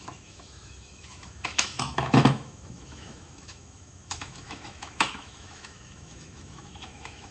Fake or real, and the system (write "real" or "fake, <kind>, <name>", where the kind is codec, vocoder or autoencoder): fake, autoencoder, DAC-VAE